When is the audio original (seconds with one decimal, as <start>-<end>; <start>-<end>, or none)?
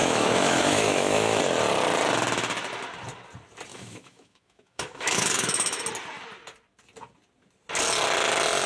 1.4-3.7; 5.8-8.7